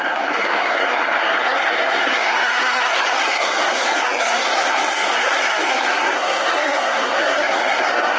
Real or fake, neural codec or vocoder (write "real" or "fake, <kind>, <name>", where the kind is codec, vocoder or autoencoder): fake, codec, SNAC